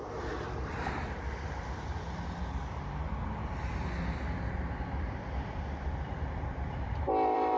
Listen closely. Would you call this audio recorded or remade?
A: remade